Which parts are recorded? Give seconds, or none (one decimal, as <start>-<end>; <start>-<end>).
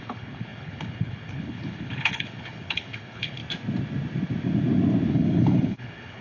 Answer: 3.4-5.1